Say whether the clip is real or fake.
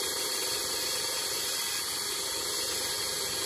fake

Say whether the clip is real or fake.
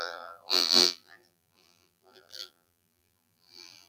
fake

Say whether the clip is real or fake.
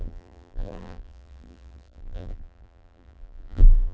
fake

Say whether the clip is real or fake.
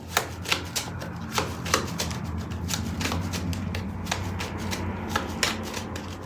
real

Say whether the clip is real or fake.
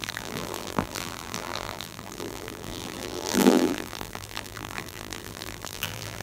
fake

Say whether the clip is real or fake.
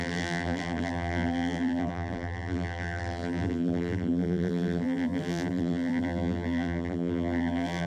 fake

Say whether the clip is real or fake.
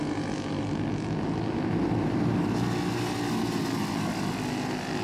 real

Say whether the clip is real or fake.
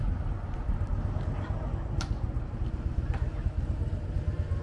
real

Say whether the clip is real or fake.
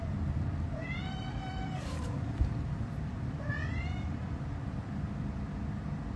fake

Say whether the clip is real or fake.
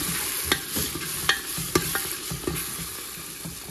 real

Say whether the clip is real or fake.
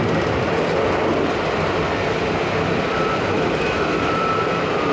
fake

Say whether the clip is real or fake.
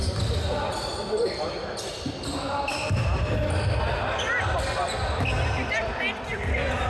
real